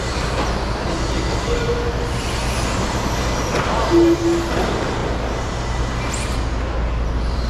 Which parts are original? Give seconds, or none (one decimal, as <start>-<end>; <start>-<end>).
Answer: 0.0-7.5